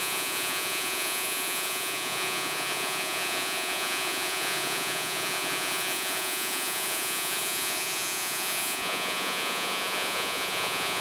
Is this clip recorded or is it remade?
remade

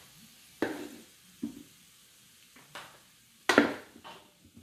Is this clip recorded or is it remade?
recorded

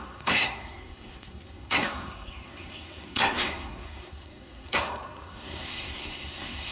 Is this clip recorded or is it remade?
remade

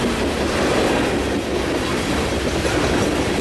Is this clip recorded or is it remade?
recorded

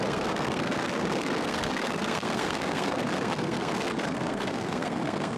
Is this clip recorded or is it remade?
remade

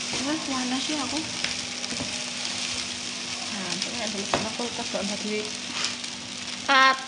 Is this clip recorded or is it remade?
recorded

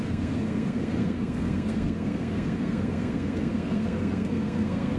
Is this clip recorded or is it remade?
remade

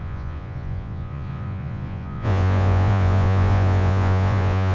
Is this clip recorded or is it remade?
remade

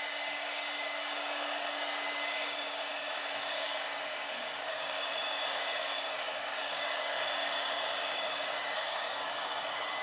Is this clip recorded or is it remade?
remade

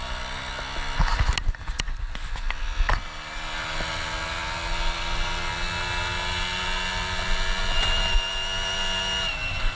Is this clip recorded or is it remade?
recorded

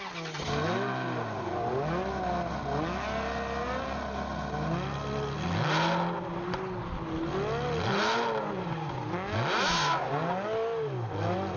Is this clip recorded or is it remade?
recorded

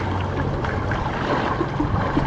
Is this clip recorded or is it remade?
recorded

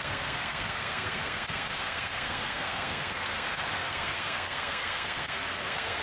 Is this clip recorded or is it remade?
remade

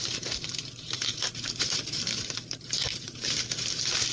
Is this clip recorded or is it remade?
remade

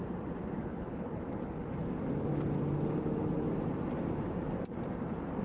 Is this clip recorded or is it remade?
recorded